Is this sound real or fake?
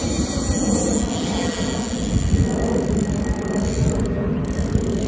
real